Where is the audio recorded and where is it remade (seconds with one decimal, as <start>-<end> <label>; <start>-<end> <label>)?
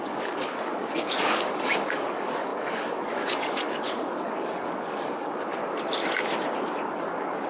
0.0-5.6 remade; 5.6-6.9 recorded; 6.9-7.5 remade